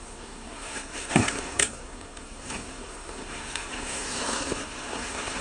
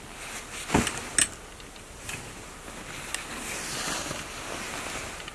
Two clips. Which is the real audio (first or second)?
second